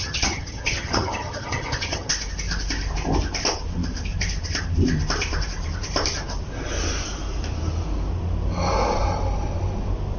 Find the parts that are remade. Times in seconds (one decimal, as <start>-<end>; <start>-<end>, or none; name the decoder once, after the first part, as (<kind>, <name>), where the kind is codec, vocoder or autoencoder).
0.0-2.1 (vocoder, HiFi-GAN)